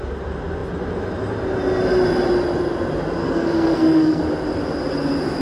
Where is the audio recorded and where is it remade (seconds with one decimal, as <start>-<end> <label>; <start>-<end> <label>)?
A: 0.0-3.2 recorded; 3.2-4.2 remade; 4.2-5.4 recorded